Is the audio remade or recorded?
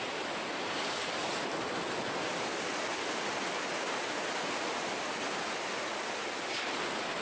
recorded